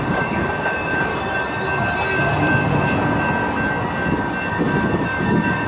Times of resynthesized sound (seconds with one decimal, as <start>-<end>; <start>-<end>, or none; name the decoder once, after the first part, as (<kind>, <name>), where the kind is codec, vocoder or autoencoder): 0.0-1.1 (codec, DAC); 4.5-5.7